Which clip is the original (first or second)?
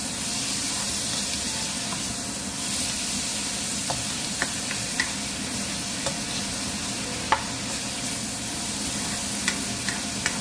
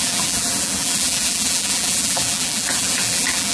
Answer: first